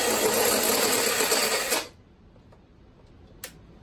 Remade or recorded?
recorded